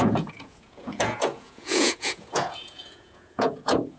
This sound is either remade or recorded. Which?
remade